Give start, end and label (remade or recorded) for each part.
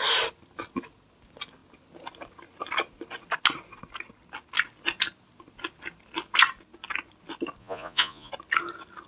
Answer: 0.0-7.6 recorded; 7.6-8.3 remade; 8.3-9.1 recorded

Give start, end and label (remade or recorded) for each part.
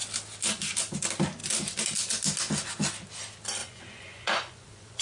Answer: 0.0-3.6 recorded; 3.6-5.0 remade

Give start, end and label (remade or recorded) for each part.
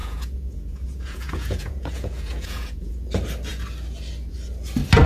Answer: 0.0-2.9 remade; 2.9-5.1 recorded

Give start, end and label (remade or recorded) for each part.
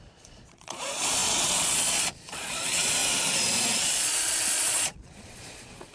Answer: 0.0-3.0 remade; 3.0-3.8 recorded; 3.8-5.9 remade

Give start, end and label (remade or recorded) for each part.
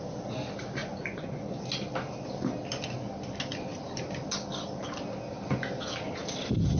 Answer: 0.0-0.8 recorded; 0.8-1.6 remade; 1.6-6.8 recorded